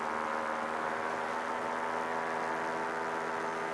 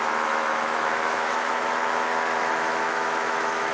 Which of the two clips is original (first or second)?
first